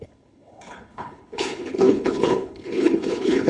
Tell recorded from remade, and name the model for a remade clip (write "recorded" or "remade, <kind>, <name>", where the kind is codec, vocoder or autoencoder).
remade, codec, HILCodec